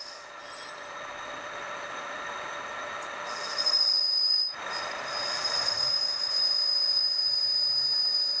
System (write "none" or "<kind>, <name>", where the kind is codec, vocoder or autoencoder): none